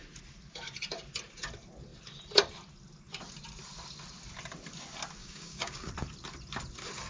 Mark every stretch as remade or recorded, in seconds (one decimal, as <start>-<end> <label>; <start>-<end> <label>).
0.0-5.2 recorded; 5.2-5.9 remade; 5.9-7.1 recorded